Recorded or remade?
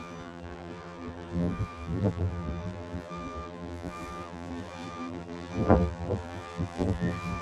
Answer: remade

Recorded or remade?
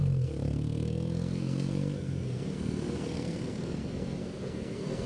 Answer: remade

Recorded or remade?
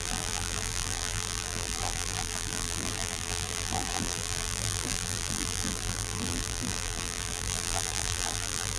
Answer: remade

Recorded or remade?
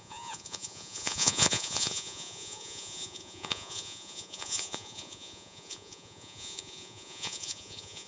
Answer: remade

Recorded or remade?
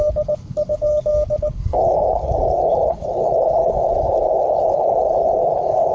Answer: remade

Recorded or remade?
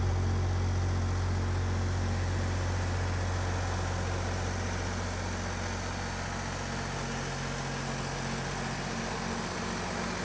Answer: recorded